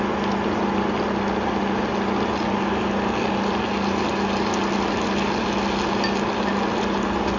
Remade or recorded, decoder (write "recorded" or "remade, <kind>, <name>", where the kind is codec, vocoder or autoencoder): recorded